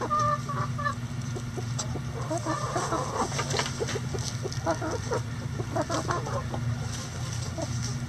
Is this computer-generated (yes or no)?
no